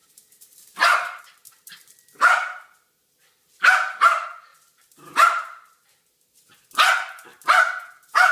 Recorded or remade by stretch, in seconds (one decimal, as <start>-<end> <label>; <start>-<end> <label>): 0.0-1.2 remade; 1.2-4.5 recorded; 4.5-6.1 remade; 6.1-8.3 recorded